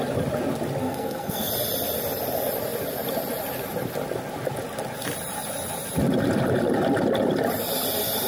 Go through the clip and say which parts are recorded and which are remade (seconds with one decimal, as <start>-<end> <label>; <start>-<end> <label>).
0.0-0.8 recorded; 0.8-1.5 remade; 1.5-8.3 recorded